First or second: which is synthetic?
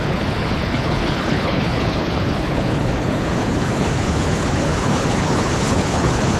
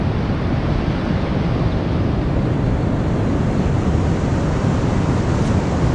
first